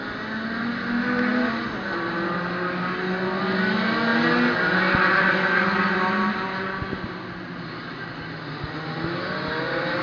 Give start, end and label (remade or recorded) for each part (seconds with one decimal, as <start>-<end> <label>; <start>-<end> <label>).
0.0-10.0 recorded